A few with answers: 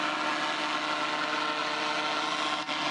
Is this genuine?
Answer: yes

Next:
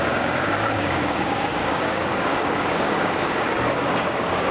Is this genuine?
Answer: no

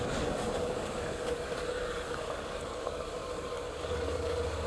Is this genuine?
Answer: no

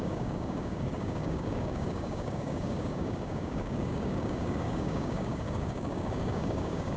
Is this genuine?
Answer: no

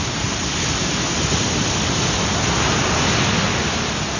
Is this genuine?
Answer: yes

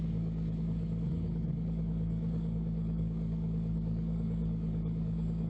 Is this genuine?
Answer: no